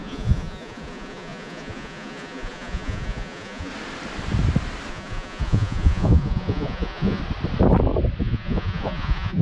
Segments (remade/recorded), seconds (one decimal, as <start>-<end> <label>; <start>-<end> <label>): 0.0-3.7 remade; 3.7-4.9 recorded; 4.9-7.2 remade; 7.2-8.2 recorded; 8.2-9.4 remade